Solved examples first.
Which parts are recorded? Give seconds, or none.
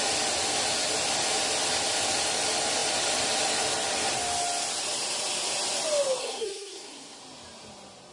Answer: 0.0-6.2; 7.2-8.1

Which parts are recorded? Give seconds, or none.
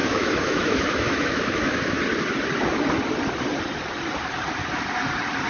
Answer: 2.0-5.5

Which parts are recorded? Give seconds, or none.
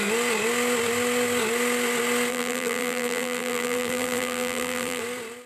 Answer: 0.0-2.3; 5.0-5.5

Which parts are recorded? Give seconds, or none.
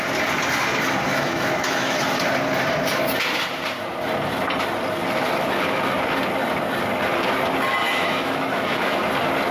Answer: 0.0-1.1; 2.0-7.8; 9.1-9.5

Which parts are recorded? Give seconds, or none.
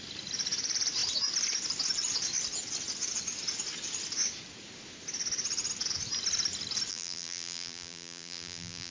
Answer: 0.0-6.9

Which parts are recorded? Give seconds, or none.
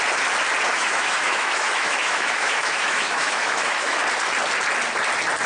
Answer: 0.0-0.7; 4.0-5.5